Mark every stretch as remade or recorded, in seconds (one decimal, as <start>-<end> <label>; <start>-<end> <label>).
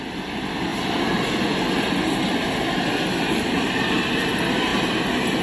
0.0-5.4 recorded